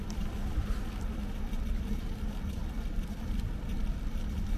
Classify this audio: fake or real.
fake